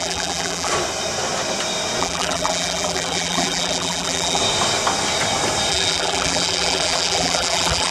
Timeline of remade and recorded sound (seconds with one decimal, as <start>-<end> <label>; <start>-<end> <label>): 0.0-0.7 remade; 0.7-2.0 recorded; 2.0-4.4 remade; 4.4-5.7 recorded; 5.7-7.9 remade